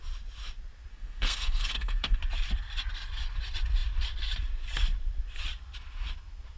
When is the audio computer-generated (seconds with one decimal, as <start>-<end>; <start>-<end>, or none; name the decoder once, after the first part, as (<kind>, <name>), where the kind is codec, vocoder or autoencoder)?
0.9-2.2 (codec, SNAC)

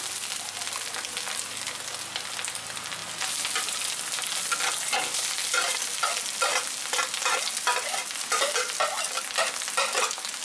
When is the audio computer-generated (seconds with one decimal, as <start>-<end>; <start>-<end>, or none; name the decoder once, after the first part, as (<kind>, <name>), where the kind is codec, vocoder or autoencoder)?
none